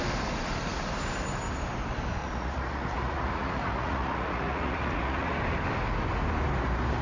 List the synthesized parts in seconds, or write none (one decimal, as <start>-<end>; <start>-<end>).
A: 2.2-5.4